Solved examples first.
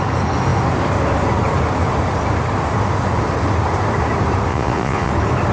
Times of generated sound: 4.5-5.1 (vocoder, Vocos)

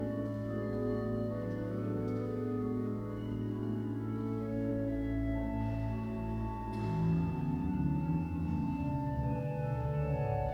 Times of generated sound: 0.0-4.7 (codec, DAC); 7.4-10.5

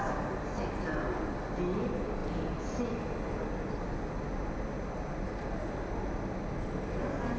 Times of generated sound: none